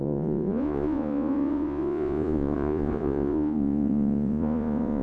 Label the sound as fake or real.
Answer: fake